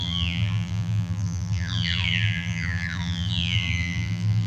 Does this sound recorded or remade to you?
remade